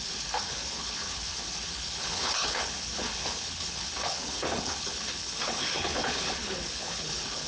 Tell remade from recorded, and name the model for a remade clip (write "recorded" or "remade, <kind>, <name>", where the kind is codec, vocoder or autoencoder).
remade, codec, HILCodec